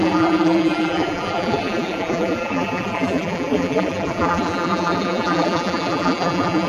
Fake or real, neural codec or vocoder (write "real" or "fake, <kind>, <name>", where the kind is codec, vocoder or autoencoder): fake, vocoder, BigVGAN v2